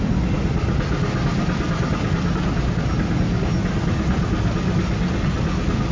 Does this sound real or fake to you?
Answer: real